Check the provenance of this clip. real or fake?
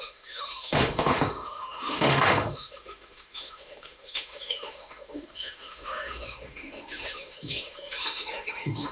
fake